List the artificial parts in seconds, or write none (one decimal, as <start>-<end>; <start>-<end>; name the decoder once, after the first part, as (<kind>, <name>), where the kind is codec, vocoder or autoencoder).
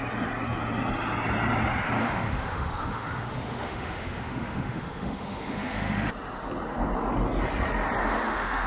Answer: 2.0-6.1 (autoencoder, DAC-VAE); 8.0-8.7